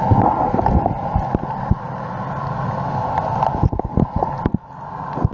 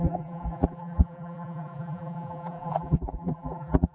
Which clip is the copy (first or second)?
second